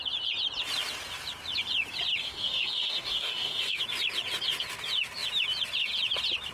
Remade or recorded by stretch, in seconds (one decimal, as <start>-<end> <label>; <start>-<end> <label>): 0.0-2.2 recorded; 2.2-3.8 remade; 3.8-6.5 recorded